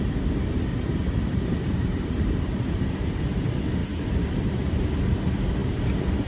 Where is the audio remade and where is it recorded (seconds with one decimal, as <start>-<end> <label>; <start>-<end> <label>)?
0.0-0.7 recorded; 0.7-3.2 remade; 3.2-3.8 recorded; 3.8-4.9 remade; 4.9-6.3 recorded